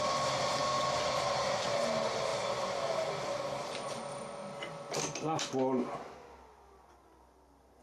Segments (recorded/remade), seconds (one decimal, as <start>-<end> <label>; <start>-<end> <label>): 0.0-7.8 recorded